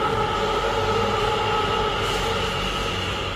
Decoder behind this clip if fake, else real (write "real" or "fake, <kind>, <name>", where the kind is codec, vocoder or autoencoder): real